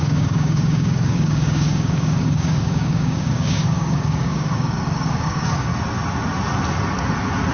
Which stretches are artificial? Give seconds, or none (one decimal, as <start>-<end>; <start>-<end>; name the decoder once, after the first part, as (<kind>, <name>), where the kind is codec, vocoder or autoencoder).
0.0-5.7 (codec, DAC)

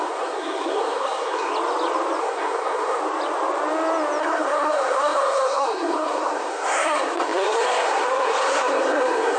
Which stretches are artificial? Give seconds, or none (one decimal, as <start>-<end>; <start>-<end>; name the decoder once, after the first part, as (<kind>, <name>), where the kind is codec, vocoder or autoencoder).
0.0-1.5 (codec, SNAC); 2.2-3.0; 4.2-9.4

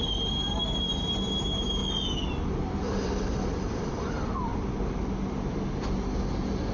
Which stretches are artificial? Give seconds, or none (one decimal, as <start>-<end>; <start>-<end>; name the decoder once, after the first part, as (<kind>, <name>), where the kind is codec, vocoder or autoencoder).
0.0-1.8 (vocoder, BigVGAN v2); 2.6-4.5; 5.8-6.7